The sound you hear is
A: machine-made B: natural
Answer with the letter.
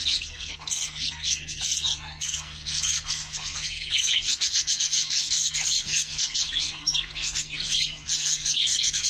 A